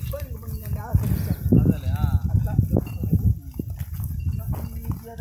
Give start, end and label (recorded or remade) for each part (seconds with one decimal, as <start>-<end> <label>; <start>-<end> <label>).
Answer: 0.0-5.2 recorded